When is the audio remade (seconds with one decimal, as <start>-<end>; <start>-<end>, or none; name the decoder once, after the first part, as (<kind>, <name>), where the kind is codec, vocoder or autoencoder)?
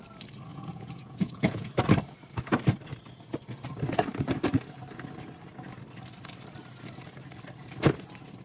0.5-1.7 (vocoder, Vocos)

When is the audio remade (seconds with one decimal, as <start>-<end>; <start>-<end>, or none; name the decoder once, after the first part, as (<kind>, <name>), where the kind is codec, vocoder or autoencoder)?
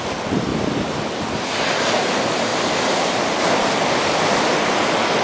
none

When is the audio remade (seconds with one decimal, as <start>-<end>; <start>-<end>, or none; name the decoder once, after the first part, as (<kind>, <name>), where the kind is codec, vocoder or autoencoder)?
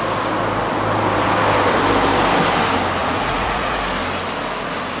3.0-3.8 (vocoder, Vocos)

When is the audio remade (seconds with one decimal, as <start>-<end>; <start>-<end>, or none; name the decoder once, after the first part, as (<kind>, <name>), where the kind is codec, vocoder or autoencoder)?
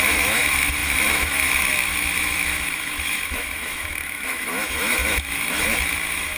0.0-6.4 (autoencoder, DAC-VAE)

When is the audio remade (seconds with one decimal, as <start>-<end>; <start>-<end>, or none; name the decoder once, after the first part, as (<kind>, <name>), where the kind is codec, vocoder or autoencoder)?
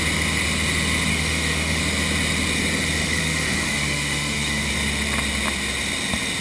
1.1-1.8 (autoencoder, DAC-VAE); 3.0-4.7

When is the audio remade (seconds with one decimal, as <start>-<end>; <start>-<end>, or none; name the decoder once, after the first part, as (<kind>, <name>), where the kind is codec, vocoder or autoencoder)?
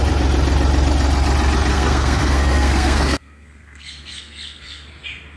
1.7-4.9 (codec, SNAC)